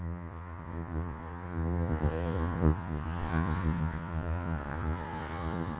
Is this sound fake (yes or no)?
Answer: yes